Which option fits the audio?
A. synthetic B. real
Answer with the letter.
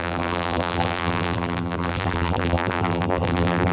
A